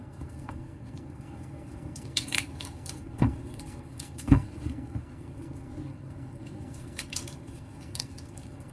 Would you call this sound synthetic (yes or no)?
yes